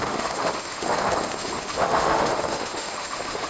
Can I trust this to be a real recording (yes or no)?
no